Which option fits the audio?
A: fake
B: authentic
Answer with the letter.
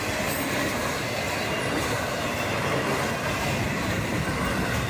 B